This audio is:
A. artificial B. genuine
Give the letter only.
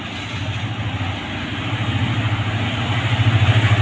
B